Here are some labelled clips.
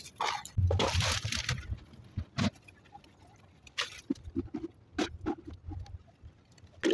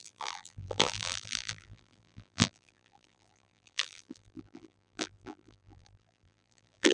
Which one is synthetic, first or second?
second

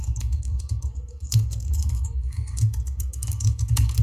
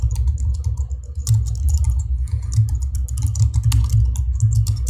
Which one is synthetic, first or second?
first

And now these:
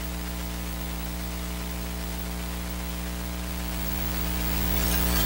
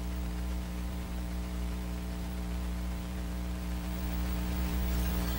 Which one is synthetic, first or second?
second